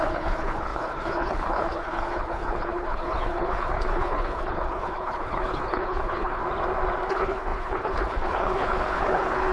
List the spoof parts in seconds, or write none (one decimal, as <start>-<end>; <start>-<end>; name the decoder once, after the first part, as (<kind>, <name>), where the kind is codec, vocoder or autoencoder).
0.0-6.4 (codec, HILCodec); 7.1-9.5